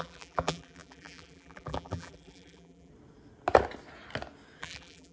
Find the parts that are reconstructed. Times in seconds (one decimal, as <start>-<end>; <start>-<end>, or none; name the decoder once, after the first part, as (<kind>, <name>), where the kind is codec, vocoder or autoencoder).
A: 0.0-2.9 (vocoder, BigVGAN v2); 4.6-5.1